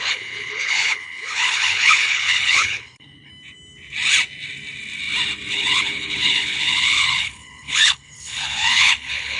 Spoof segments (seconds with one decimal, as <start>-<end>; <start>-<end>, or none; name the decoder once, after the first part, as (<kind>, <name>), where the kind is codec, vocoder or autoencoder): 0.0-3.3 (codec, HILCodec); 5.5-9.4

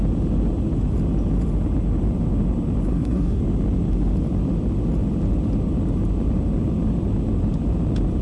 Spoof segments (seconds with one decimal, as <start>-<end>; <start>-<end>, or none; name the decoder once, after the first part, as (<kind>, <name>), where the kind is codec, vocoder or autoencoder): 2.9-3.4 (codec, SNAC)

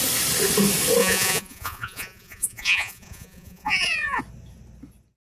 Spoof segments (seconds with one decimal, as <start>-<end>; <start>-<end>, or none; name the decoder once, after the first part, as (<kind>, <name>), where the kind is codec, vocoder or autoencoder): 1.0-4.2 (vocoder, Vocos)